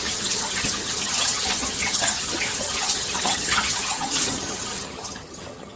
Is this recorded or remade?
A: remade